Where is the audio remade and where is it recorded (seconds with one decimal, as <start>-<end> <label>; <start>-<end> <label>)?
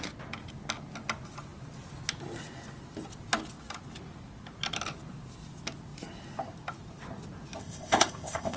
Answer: 0.0-7.6 recorded; 7.6-8.6 remade